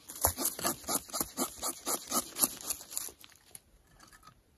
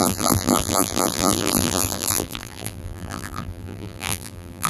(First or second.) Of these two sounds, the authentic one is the first